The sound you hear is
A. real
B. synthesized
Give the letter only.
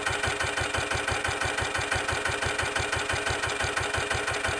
A